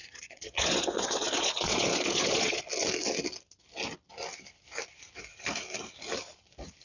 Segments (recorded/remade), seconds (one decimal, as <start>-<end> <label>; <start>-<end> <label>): 0.0-2.6 remade; 2.6-6.8 recorded